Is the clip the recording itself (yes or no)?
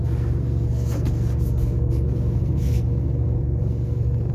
no